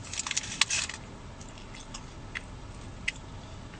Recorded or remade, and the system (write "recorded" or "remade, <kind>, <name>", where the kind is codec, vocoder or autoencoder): recorded